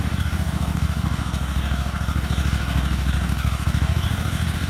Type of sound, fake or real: fake